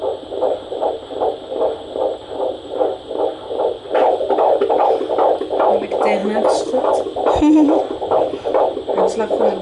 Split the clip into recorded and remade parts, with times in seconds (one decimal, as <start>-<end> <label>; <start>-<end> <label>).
0.0-9.6 recorded

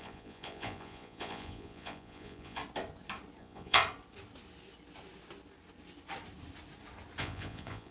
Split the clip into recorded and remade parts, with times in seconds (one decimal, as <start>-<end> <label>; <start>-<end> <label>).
0.0-2.6 remade; 2.6-3.4 recorded; 3.4-3.8 remade; 3.8-7.2 recorded; 7.2-7.9 remade

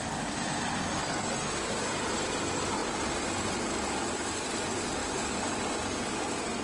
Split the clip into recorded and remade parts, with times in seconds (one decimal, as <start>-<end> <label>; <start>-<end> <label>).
0.0-6.6 recorded